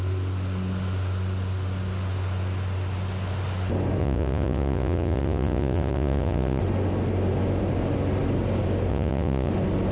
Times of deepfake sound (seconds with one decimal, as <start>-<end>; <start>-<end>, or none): 4.0-6.6; 8.9-9.5